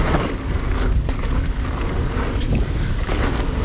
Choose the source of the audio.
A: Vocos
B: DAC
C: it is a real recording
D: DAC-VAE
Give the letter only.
B